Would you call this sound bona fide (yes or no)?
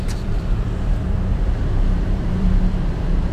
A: no